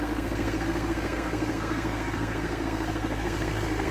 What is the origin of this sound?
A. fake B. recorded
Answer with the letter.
A